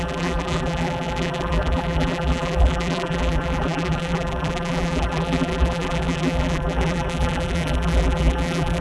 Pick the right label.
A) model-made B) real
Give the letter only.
A